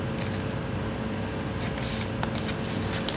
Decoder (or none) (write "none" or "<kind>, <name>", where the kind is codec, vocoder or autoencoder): none